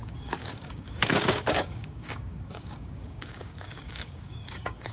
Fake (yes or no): yes